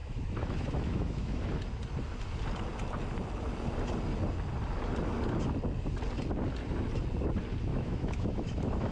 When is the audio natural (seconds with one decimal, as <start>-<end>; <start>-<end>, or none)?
1.4-7.7